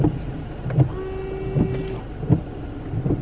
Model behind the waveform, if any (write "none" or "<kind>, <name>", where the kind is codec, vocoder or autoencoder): none